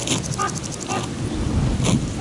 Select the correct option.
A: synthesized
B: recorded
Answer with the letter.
B